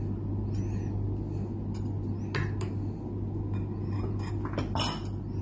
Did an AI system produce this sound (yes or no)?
no